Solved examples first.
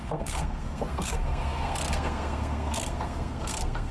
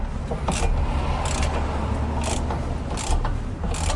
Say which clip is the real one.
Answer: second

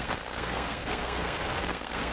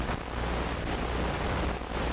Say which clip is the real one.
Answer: second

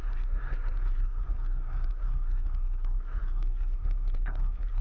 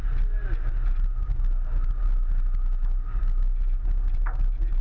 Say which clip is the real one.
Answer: second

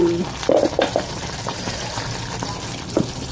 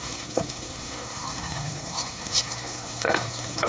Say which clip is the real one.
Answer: first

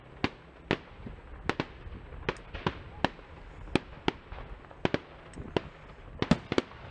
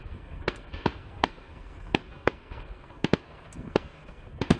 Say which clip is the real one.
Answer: first